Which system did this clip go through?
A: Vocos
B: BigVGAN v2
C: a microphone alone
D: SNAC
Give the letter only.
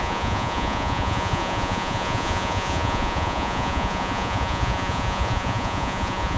A